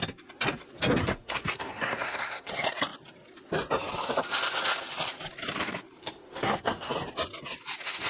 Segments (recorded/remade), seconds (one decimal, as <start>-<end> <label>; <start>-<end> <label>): 0.0-1.0 recorded; 1.0-2.5 remade; 2.5-6.0 recorded; 6.0-6.9 remade; 6.9-8.1 recorded